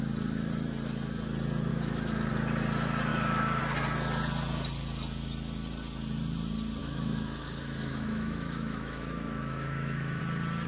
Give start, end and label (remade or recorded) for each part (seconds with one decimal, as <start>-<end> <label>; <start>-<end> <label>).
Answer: 0.0-1.7 recorded; 1.7-2.3 remade; 2.3-3.1 recorded; 3.1-3.6 remade; 3.6-6.8 recorded; 6.8-10.2 remade; 10.2-10.7 recorded